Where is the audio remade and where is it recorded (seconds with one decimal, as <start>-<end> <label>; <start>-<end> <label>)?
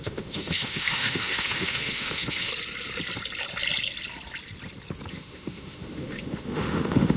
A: 0.0-2.5 remade; 2.5-5.1 recorded; 5.1-7.2 remade